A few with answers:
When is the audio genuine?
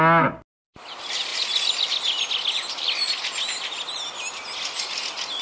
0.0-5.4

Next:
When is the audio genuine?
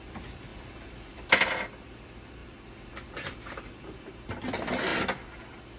0.0-5.8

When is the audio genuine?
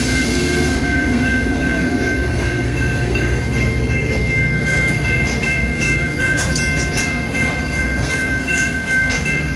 6.5-7.0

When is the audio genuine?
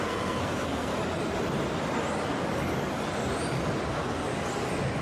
0.9-3.9; 4.3-5.0